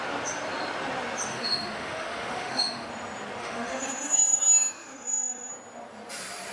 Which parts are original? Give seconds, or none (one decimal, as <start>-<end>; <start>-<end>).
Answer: 0.0-1.3; 2.9-3.4; 5.5-6.5